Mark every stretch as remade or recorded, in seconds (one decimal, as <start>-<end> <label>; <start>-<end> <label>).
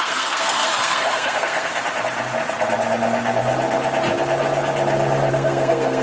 0.0-1.7 remade; 1.7-5.3 recorded; 5.3-6.0 remade